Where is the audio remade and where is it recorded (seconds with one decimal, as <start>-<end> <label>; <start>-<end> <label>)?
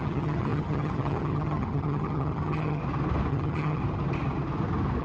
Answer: 0.0-2.8 remade; 2.8-3.3 recorded; 3.3-3.8 remade; 3.8-5.0 recorded